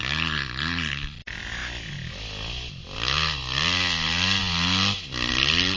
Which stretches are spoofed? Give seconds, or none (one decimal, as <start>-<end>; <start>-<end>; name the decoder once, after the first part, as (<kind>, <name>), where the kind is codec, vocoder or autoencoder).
none